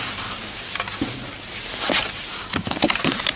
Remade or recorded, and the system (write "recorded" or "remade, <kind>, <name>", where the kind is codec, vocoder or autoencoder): recorded